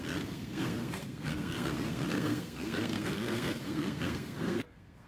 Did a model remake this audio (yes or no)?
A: yes